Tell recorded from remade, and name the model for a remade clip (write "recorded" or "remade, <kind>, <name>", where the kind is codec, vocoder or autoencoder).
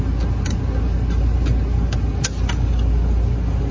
recorded